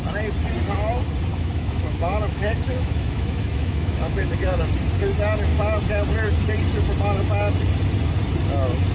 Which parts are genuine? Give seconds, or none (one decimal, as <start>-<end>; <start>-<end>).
0.0-1.3; 4.6-8.9